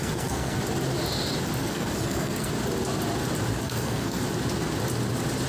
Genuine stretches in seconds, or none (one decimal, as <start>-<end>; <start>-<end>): 0.6-1.6; 2.5-3.5; 4.2-5.5